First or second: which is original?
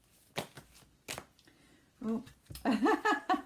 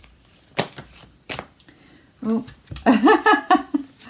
first